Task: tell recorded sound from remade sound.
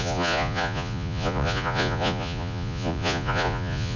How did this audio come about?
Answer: remade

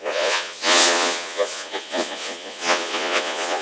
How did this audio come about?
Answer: remade